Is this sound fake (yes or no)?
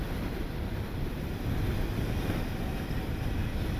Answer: no